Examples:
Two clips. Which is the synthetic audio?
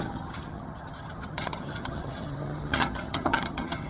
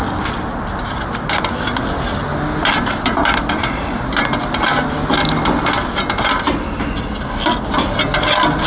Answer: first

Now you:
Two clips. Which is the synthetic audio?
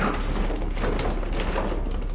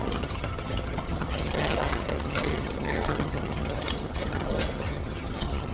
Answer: second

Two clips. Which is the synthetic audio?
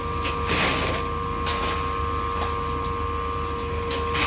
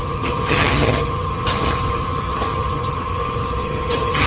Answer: second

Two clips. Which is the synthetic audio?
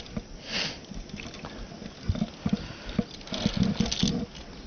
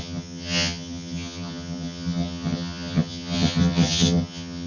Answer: second